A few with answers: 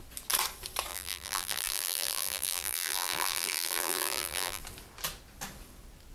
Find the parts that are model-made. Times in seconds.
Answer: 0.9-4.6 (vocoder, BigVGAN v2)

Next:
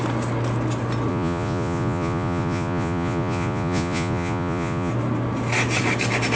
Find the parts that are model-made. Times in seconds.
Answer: 1.1-4.9 (vocoder, Vocos)

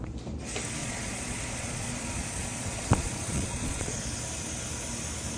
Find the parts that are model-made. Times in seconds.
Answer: 0.8-4.0 (vocoder, Vocos)

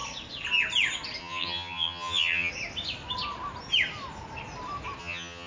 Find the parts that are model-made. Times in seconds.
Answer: 1.2-2.5 (vocoder, HiFi-GAN); 5.0-5.5

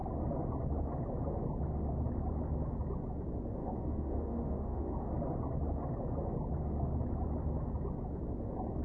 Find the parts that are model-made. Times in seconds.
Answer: 3.6-5.1 (autoencoder, DAC-VAE)

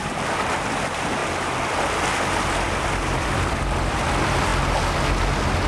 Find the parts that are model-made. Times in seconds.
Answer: 0.0-4.5 (vocoder, BigVGAN v2)

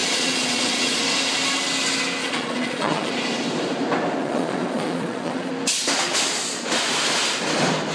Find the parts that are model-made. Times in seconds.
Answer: 0.0-1.0 (vocoder, Vocos); 2.2-3.1; 4.2-5.5